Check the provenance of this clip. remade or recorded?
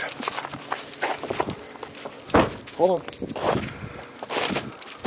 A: recorded